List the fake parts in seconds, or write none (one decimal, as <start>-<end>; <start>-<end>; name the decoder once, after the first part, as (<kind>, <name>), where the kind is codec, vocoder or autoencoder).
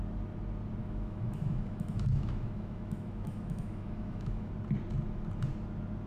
0.8-4.5 (autoencoder, DAC-VAE)